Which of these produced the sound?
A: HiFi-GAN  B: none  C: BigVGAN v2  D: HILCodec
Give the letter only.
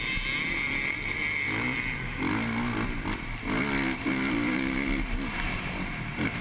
B